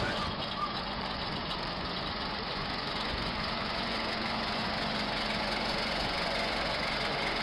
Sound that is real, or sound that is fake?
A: fake